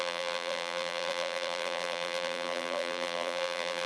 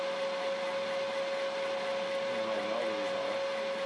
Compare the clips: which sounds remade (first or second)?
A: first